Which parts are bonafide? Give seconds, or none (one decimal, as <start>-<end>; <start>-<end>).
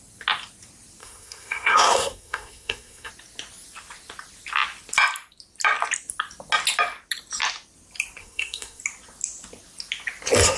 0.0-1.0; 3.1-8.2; 8.8-10.6